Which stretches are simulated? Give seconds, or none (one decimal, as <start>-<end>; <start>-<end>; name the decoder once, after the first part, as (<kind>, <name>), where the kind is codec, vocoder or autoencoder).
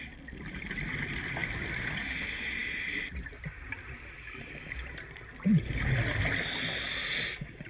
none